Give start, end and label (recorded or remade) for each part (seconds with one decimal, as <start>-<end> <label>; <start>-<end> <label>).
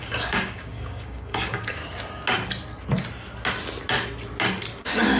0.0-1.8 remade; 1.8-4.8 recorded; 4.8-5.2 remade